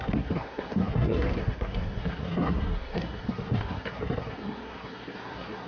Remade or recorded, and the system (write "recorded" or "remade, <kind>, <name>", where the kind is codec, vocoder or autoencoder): remade, codec, SNAC